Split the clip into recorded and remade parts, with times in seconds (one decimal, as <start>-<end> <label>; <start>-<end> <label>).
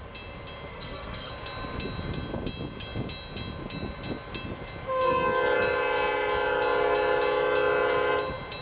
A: 0.0-0.7 recorded; 0.7-1.3 remade; 1.3-8.6 recorded